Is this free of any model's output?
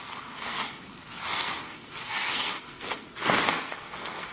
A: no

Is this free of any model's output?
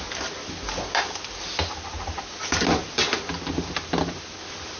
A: yes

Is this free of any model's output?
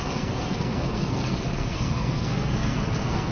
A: no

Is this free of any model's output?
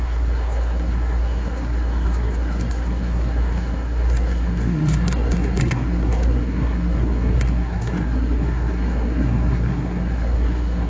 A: no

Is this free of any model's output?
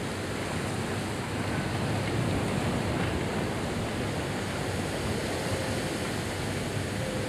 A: yes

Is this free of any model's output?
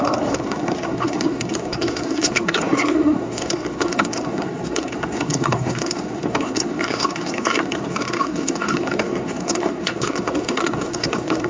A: no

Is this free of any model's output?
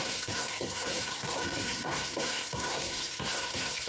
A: no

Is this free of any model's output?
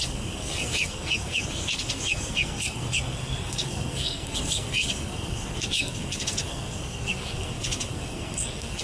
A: no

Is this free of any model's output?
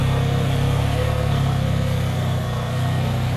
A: no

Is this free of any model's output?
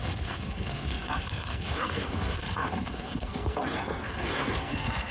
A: no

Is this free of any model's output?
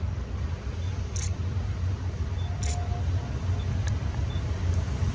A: yes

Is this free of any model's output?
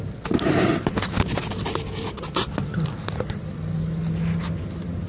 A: yes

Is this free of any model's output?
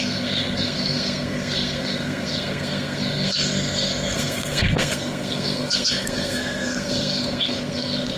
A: no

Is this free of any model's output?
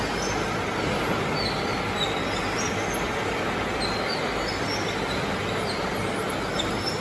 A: yes